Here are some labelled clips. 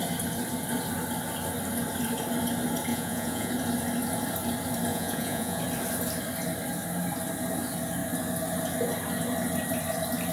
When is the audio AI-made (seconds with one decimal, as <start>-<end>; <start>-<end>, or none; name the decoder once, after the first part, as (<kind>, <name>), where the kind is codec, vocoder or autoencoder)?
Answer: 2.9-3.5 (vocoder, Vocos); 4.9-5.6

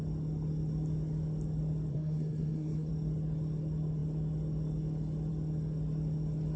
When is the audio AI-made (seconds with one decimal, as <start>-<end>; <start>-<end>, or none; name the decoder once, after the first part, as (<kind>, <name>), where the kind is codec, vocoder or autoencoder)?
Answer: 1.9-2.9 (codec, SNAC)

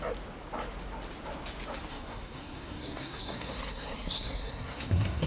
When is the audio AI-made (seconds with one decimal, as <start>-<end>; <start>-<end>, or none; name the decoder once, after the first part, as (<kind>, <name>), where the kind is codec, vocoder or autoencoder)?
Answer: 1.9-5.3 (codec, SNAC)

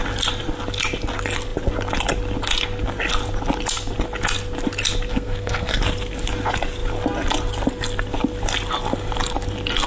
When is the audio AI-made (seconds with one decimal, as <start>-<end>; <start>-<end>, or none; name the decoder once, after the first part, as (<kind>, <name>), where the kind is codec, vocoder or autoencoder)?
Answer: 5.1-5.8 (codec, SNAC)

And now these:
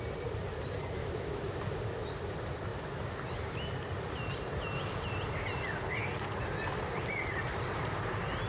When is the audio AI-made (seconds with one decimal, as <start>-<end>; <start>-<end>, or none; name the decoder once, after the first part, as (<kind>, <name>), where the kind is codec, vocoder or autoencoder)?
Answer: 1.0-1.5 (autoencoder, DAC-VAE)